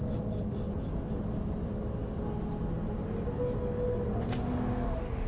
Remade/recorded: recorded